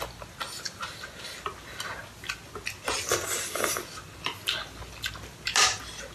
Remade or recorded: recorded